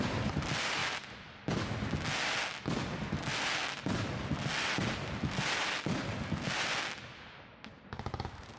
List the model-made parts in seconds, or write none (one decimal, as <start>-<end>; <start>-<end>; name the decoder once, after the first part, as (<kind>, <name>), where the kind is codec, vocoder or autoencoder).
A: none

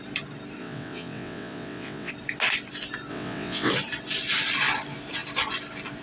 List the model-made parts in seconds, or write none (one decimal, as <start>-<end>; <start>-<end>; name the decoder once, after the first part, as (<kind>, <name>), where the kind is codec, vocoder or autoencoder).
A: 0.6-2.1 (vocoder, WaveNeXt); 3.1-3.7

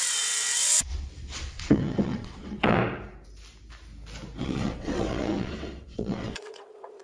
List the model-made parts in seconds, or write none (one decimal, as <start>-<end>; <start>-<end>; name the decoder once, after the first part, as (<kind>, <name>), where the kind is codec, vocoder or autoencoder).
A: 0.0-2.8 (vocoder, WaveNeXt); 4.4-7.0